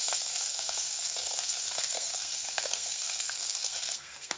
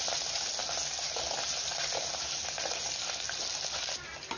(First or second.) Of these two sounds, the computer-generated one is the first